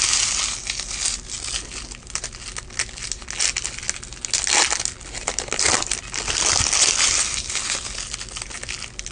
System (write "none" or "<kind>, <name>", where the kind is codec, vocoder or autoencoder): none